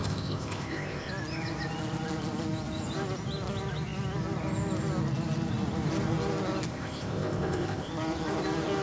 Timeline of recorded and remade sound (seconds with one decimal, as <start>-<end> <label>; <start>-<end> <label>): 0.0-1.1 remade; 1.1-6.7 recorded; 6.7-7.9 remade; 7.9-8.8 recorded